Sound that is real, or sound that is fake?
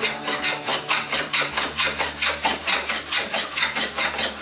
fake